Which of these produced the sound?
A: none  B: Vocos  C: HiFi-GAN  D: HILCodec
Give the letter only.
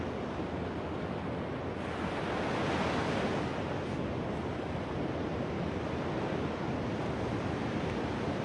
A